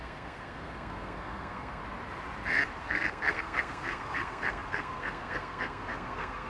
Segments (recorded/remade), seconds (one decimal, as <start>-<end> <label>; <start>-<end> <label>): 0.0-1.8 remade; 1.8-2.8 recorded; 2.8-6.5 remade